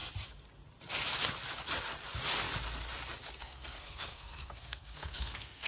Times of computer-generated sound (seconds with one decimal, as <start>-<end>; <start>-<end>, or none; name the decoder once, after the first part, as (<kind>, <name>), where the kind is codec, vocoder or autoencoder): 3.4-5.7 (codec, SNAC)